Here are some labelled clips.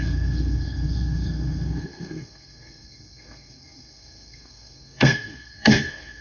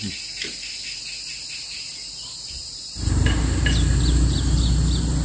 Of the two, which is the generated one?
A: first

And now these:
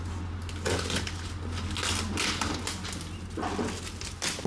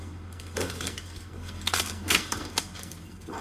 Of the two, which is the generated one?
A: second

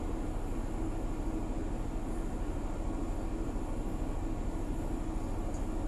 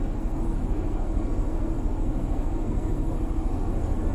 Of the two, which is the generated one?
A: second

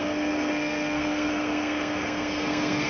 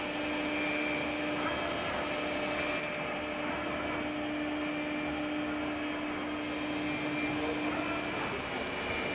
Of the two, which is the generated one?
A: first